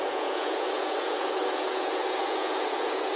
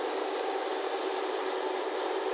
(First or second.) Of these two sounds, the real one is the second